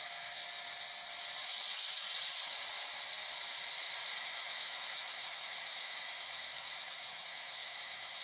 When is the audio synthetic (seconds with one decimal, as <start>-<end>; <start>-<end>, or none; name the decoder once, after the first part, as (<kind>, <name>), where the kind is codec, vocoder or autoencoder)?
0.0-0.4 (autoencoder, DAC-VAE); 4.2-8.2